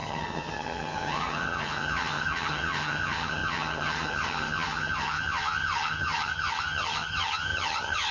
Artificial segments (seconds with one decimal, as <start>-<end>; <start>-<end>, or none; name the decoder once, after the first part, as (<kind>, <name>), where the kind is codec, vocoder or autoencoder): 0.0-8.1 (vocoder, HiFi-GAN)